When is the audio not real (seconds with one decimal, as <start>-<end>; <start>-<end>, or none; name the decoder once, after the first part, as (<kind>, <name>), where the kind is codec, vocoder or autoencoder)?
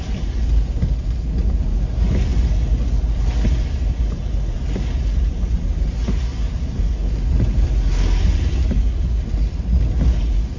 none